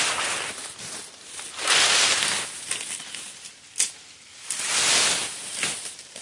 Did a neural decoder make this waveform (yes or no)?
no